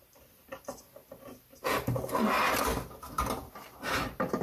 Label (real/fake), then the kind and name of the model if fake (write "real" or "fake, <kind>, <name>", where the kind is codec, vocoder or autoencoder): real